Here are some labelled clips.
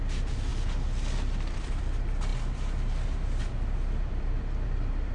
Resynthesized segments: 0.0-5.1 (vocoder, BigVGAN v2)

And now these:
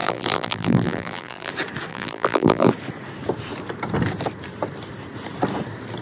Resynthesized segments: 0.0-1.5 (vocoder, BigVGAN v2); 1.9-2.7